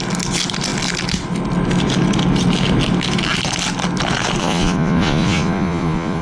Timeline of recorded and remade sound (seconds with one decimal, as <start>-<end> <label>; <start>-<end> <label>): 0.0-4.4 recorded; 4.4-6.2 remade